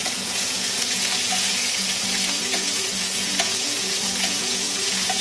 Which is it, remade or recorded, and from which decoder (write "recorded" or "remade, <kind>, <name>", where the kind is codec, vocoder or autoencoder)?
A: remade, vocoder, Vocos